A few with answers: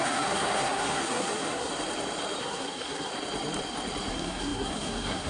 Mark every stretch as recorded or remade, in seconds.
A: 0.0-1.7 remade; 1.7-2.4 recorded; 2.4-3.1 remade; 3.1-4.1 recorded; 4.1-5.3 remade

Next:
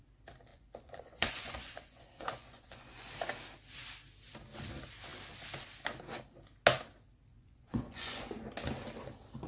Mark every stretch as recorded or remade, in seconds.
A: 0.0-0.5 recorded; 0.5-3.1 remade; 3.1-7.3 recorded; 7.3-8.3 remade; 8.3-9.5 recorded

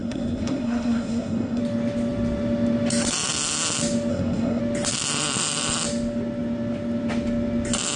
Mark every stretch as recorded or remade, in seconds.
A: 0.0-1.6 remade; 1.6-4.1 recorded; 4.1-4.6 remade; 4.6-8.0 recorded